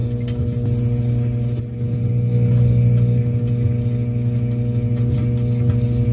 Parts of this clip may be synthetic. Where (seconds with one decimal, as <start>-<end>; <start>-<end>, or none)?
none